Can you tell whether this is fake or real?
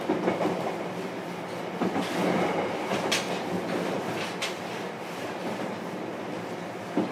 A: real